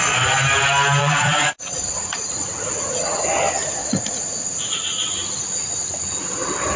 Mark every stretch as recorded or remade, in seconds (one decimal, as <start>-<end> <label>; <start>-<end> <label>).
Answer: 0.0-1.0 recorded; 1.0-3.2 remade; 3.2-3.8 recorded; 3.8-4.9 remade; 4.9-6.8 recorded